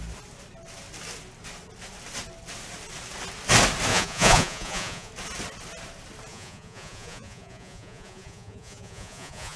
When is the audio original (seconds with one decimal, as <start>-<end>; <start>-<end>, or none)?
0.0-3.9; 5.1-6.3